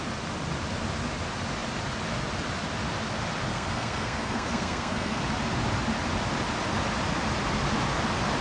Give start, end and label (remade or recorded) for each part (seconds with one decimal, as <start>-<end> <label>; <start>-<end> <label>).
0.0-3.5 recorded; 3.5-5.2 remade; 5.2-8.4 recorded